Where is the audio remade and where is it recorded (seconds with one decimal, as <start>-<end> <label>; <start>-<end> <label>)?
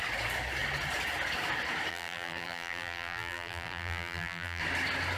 0.0-1.9 recorded; 1.9-4.6 remade; 4.6-5.2 recorded